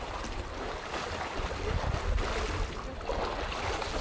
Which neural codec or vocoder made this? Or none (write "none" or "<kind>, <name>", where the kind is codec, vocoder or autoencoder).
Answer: none